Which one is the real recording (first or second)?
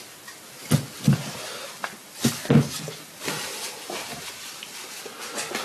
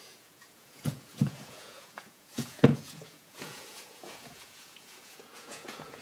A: first